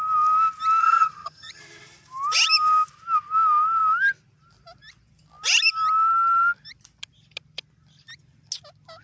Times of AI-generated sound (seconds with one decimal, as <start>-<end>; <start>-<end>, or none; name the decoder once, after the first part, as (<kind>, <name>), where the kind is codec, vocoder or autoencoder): 0.8-1.6 (vocoder, HiFi-GAN)